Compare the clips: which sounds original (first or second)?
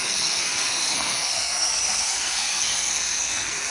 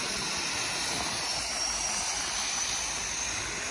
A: second